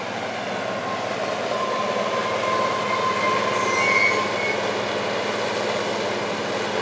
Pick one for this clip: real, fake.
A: real